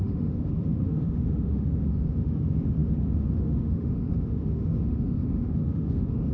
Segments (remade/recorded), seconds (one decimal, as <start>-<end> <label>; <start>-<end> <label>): 0.0-6.3 remade